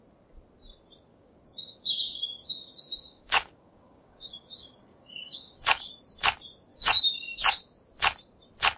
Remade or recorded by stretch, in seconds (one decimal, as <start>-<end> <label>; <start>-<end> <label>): 0.0-1.1 recorded; 1.1-5.9 remade; 5.9-6.7 recorded; 6.7-7.6 remade; 7.6-8.8 recorded